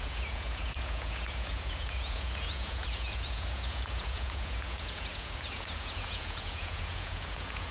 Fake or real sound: fake